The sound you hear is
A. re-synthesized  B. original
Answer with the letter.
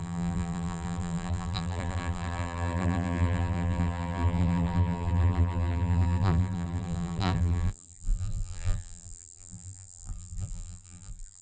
A